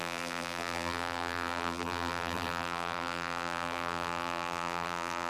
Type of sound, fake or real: fake